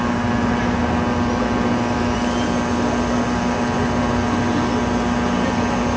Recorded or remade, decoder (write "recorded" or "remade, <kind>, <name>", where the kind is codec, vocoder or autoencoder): recorded